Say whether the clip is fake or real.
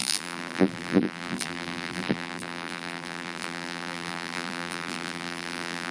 fake